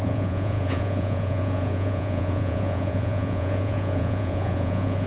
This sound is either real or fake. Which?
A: fake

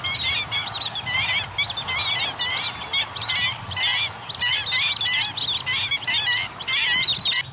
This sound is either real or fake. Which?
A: real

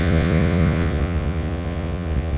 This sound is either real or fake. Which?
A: fake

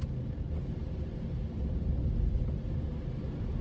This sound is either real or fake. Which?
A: real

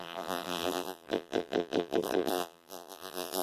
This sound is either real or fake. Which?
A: fake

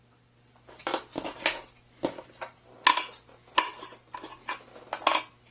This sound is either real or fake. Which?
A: real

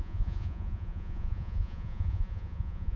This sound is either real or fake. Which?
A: fake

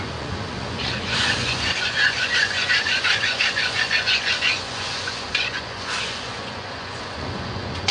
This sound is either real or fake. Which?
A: fake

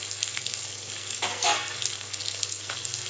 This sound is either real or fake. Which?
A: fake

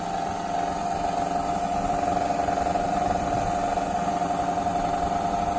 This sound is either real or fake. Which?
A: real